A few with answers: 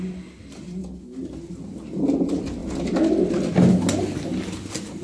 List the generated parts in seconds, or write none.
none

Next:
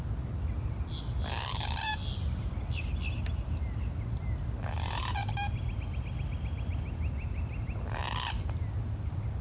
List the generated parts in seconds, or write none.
none